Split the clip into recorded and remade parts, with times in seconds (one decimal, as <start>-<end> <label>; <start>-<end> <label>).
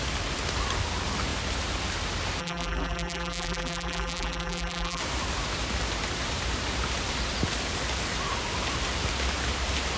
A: 0.0-2.4 recorded; 2.4-5.0 remade; 5.0-10.0 recorded